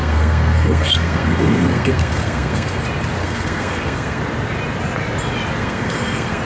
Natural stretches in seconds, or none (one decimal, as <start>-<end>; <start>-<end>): 2.8-3.2; 4.2-5.6